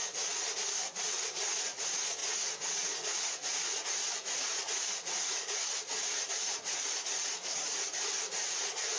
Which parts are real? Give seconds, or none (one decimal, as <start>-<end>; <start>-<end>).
0.0-1.0

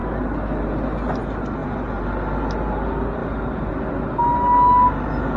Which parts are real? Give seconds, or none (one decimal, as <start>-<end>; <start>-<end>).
0.0-5.4

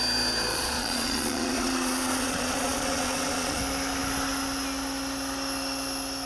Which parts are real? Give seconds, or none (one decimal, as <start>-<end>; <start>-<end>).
0.0-0.5; 3.6-6.3

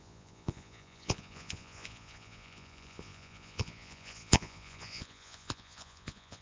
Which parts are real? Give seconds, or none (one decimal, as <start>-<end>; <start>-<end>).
none